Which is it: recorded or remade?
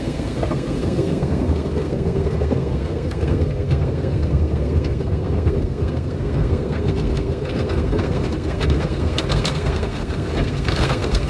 remade